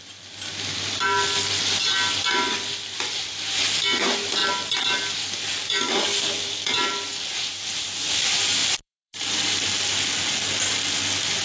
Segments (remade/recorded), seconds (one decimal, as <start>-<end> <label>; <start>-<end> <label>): 0.0-8.6 recorded; 8.6-9.7 remade; 9.7-11.4 recorded